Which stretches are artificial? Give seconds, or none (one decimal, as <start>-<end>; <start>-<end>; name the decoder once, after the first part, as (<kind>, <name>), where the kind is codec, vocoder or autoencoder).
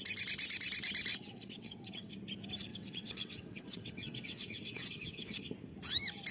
1.1-2.1 (vocoder, WaveNeXt); 2.7-5.4